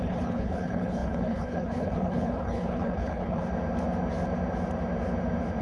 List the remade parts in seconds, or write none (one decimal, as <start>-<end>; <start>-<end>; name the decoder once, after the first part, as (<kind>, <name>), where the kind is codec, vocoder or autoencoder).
0.0-3.4 (codec, HILCodec)